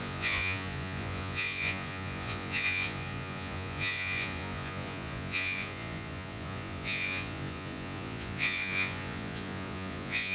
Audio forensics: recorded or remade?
remade